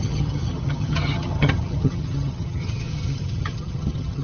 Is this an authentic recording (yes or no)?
no